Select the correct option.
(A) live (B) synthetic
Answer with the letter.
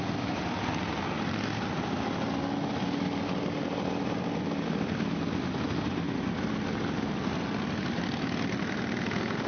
A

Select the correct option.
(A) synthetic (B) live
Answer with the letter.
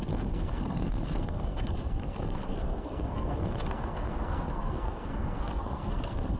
A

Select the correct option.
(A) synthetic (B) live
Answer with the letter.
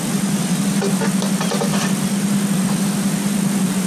B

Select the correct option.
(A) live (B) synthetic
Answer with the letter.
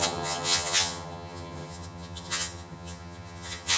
B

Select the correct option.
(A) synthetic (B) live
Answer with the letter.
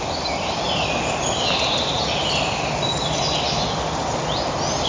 B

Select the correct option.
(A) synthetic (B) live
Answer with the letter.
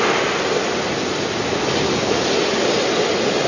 B